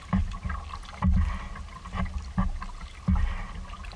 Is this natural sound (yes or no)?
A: yes